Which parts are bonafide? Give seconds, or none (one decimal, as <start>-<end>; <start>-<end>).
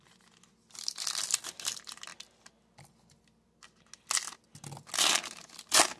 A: 0.0-6.0